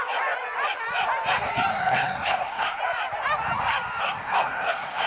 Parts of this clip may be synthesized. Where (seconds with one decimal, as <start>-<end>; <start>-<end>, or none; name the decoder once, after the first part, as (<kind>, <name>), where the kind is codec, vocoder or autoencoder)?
1.7-2.8 (codec, SNAC); 4.0-5.1